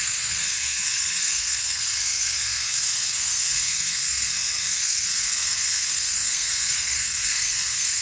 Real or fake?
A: fake